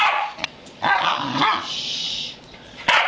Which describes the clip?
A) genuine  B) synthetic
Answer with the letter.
B